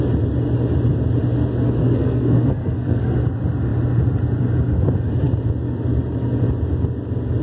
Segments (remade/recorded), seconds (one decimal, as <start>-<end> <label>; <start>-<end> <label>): 0.0-1.8 recorded; 1.8-3.0 remade; 3.0-7.4 recorded